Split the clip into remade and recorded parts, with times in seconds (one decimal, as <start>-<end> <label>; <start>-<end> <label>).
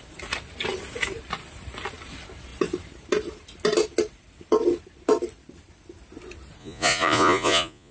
0.0-6.6 recorded; 6.6-7.9 remade